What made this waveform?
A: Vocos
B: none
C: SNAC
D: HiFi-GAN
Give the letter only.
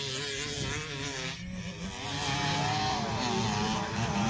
B